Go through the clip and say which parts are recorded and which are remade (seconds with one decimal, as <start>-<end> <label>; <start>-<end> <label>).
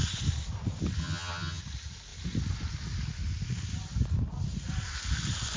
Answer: 0.0-1.0 recorded; 1.0-1.6 remade; 1.6-5.6 recorded